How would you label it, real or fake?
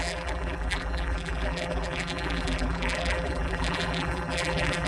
fake